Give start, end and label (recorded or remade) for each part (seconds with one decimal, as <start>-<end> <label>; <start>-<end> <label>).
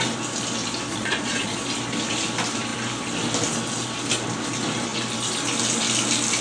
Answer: 0.0-0.9 recorded; 0.9-1.6 remade; 1.6-6.4 recorded